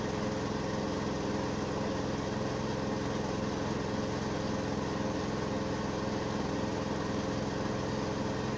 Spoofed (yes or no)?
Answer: no